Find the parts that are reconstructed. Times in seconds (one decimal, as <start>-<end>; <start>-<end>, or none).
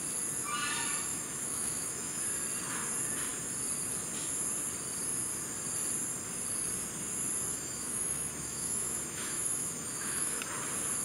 1.1-2.2; 7.5-10.5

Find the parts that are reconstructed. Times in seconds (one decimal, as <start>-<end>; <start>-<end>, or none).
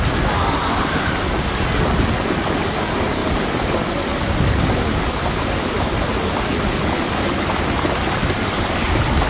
none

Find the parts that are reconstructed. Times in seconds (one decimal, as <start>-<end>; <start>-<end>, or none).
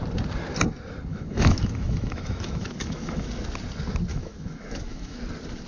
1.1-3.3; 4.1-5.2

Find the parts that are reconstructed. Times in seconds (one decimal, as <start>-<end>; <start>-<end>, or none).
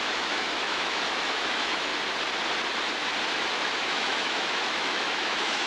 0.0-1.9; 3.4-5.7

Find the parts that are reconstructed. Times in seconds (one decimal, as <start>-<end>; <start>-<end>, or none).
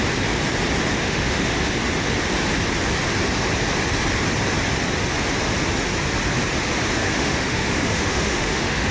1.0-1.7; 7.0-8.9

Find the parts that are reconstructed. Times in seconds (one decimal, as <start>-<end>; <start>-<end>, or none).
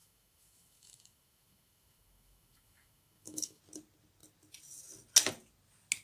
0.0-3.6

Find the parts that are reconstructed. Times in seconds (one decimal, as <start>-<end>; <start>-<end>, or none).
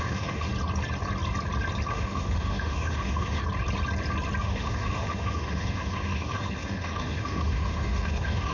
0.0-0.5; 1.9-3.4; 4.4-8.5